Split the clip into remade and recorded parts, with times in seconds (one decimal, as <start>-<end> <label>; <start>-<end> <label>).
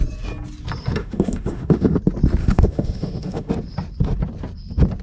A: 0.0-1.0 recorded; 1.0-2.0 remade; 2.0-2.4 recorded; 2.4-3.5 remade; 3.5-5.0 recorded